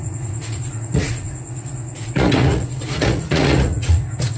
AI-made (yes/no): yes